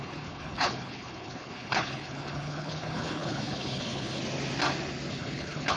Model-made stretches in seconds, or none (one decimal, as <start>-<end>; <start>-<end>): 0.0-4.2; 5.1-5.8